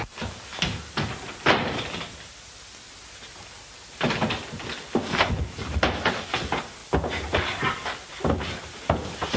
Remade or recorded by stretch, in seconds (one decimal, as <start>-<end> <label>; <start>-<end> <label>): 0.0-9.4 recorded